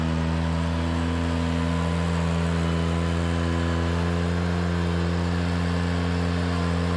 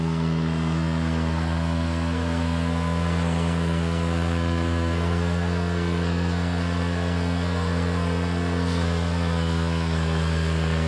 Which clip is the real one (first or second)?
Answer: first